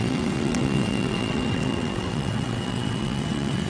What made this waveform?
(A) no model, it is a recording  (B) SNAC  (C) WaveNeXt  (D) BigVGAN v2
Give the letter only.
C